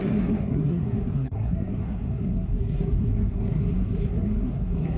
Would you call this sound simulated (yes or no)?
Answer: yes